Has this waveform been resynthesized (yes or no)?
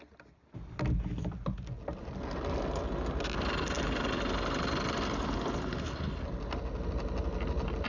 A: no